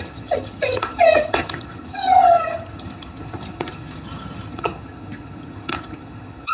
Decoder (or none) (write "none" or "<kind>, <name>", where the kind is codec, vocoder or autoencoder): vocoder, HiFi-GAN